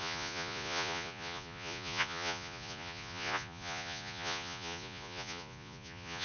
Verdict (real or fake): fake